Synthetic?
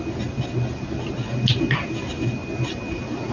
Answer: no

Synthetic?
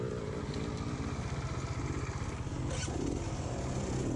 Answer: no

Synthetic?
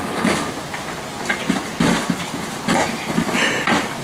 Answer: no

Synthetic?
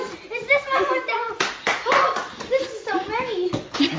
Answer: no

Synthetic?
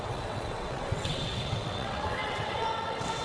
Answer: yes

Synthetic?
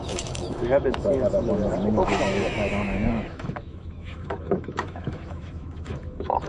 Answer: yes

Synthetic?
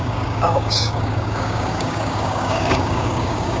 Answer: yes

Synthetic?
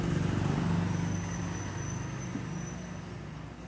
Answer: no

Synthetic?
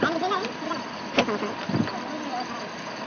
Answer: no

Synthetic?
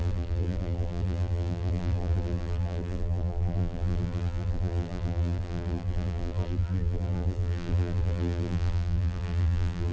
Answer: yes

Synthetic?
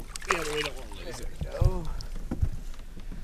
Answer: no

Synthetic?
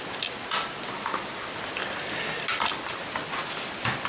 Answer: no